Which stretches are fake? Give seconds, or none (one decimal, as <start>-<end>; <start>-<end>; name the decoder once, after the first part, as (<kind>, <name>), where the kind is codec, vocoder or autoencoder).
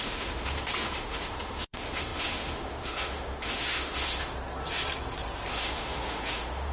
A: 0.0-4.3 (autoencoder, DAC-VAE); 5.5-6.7